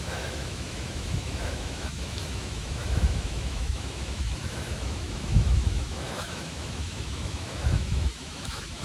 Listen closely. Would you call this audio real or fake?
fake